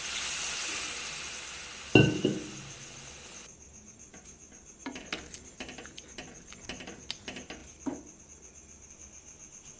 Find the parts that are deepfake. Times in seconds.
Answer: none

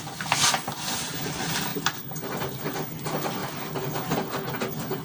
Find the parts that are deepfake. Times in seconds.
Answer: none

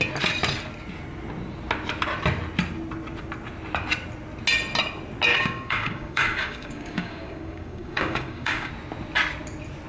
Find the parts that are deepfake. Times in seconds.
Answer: 5.3-8.7 (codec, DAC)

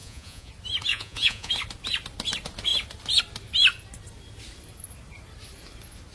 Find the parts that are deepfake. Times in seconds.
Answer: 0.0-0.5 (vocoder, Vocos); 0.9-1.5

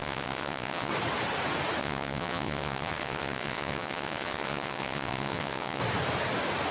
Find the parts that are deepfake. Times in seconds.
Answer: 0.0-0.9 (vocoder, WaveNeXt); 1.8-5.8

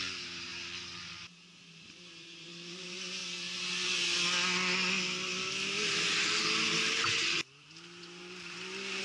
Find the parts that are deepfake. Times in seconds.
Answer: 0.0-0.5 (vocoder, BigVGAN v2); 1.0-3.2; 6.9-9.0